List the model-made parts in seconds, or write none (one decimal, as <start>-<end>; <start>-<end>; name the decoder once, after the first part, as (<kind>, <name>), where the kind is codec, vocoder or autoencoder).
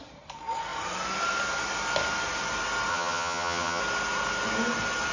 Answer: 2.9-3.8 (vocoder, HiFi-GAN)